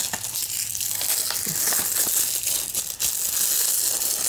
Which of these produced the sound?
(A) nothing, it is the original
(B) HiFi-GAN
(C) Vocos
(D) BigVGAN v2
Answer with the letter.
A